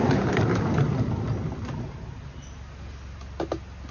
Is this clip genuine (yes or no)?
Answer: yes